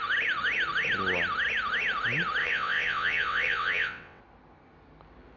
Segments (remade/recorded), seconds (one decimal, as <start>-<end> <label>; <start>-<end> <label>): 0.0-2.4 recorded; 2.4-4.2 remade; 4.2-5.4 recorded